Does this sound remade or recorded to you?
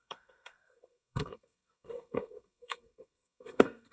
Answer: remade